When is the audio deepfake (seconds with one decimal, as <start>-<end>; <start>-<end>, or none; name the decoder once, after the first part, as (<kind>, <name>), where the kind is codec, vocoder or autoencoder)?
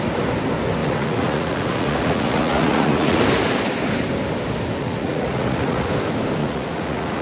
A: 0.8-3.2 (vocoder, Vocos); 4.8-5.9; 6.4-7.2